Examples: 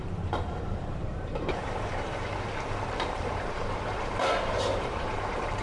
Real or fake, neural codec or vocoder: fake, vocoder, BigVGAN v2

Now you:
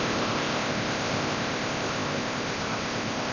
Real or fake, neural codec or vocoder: fake, codec, ZipCodec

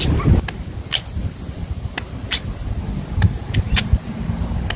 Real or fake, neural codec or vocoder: real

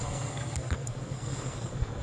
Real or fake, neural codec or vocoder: fake, codec, SNAC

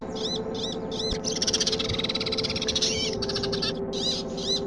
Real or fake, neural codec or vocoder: real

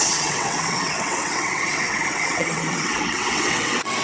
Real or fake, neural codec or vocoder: fake, vocoder, WaveNeXt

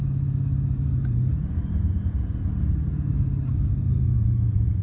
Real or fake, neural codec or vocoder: fake, vocoder, Vocos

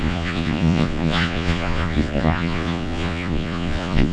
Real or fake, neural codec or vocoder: fake, vocoder, Vocos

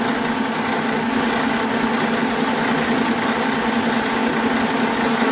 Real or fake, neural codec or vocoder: real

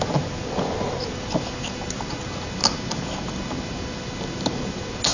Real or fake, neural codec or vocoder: real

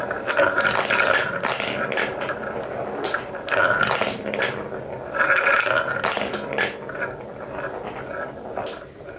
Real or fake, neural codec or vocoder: real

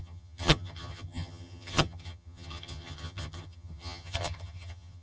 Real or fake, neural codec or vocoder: fake, vocoder, HiFi-GAN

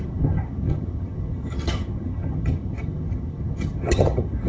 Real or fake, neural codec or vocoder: fake, vocoder, HiFi-GAN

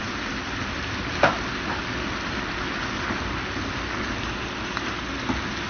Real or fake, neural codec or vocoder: real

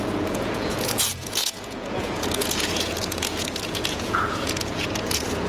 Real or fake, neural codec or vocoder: fake, vocoder, Vocos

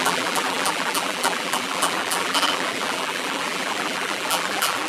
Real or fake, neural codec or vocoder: fake, vocoder, BigVGAN v2